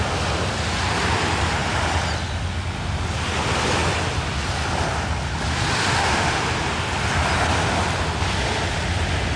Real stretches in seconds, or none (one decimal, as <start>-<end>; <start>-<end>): 0.0-5.9; 6.4-9.4